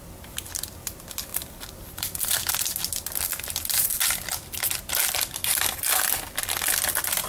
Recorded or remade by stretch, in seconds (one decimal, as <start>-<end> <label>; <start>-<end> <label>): 0.0-1.3 recorded; 1.3-2.6 remade; 2.6-7.3 recorded